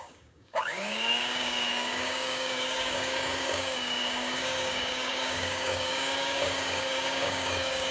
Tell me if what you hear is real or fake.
fake